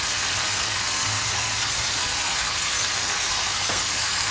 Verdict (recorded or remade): remade